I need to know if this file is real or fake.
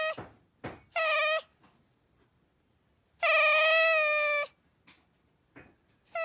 real